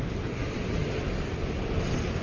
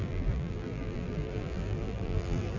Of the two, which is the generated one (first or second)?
second